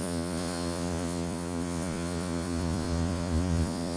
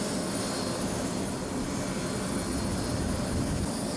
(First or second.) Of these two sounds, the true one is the second